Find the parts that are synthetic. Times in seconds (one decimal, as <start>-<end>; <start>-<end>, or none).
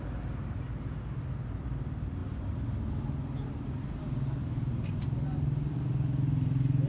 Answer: none